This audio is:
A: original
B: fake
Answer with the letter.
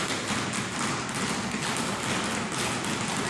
A